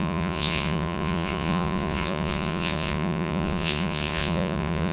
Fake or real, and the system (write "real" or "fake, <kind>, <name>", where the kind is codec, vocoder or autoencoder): fake, vocoder, Vocos